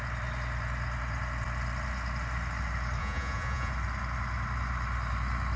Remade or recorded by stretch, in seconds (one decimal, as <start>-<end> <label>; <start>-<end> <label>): 0.0-3.0 recorded; 3.0-3.7 remade; 3.7-5.6 recorded